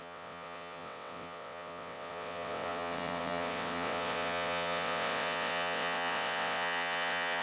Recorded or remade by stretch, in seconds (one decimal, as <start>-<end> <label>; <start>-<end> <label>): 0.0-7.4 remade